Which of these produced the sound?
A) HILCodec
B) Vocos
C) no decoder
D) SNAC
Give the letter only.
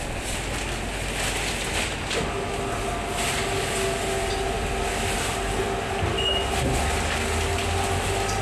C